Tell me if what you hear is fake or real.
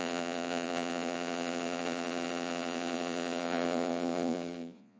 fake